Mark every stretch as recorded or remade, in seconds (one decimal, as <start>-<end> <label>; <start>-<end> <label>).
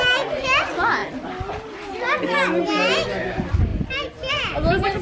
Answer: 0.0-5.0 recorded